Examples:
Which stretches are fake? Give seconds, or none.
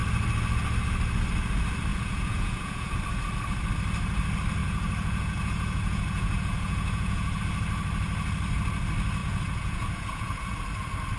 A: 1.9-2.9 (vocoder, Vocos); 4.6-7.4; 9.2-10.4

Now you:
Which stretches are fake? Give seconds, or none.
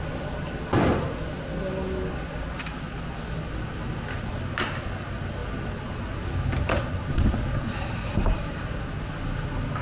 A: none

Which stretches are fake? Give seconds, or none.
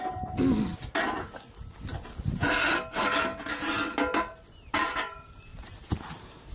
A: 5.5-6.5 (vocoder, BigVGAN v2)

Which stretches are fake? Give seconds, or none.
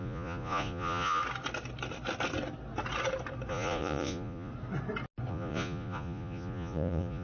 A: 0.0-1.2 (vocoder, Vocos); 3.5-4.5; 5.3-7.2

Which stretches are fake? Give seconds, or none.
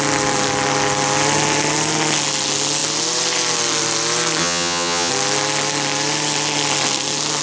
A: 4.4-5.1 (vocoder, HiFi-GAN)